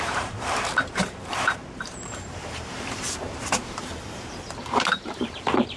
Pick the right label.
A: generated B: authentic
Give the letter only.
A